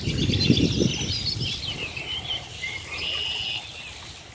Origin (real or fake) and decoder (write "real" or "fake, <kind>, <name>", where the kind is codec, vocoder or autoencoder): real